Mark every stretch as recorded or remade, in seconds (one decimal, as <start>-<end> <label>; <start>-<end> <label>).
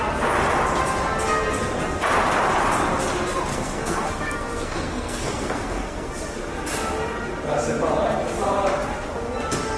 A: 0.0-3.5 recorded; 3.5-6.1 remade; 6.1-9.8 recorded